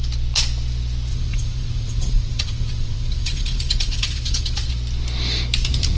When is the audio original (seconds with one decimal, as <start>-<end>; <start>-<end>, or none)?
0.0-1.1; 4.7-6.0